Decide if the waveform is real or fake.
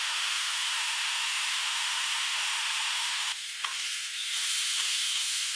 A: fake